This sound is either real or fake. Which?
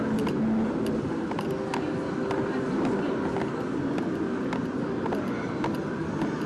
real